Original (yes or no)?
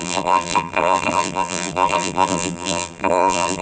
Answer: no